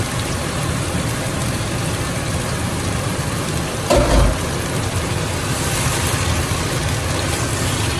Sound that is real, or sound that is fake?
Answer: fake